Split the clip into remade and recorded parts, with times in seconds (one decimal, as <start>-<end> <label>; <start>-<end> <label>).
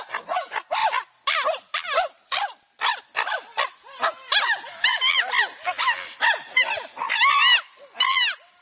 0.0-8.6 recorded